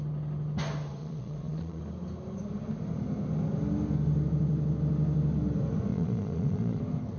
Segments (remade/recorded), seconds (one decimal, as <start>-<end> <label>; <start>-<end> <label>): 0.0-1.0 recorded; 1.0-1.8 remade; 1.8-5.9 recorded; 5.9-6.8 remade; 6.8-7.2 recorded